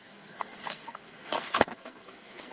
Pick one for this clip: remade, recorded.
remade